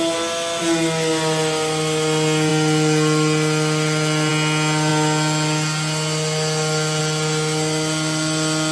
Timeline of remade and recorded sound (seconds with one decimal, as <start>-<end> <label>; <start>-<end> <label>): 0.0-8.7 recorded